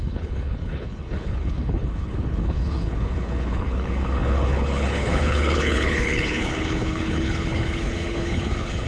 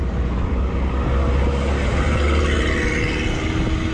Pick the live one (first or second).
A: second